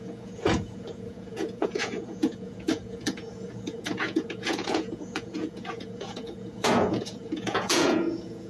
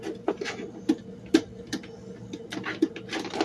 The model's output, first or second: first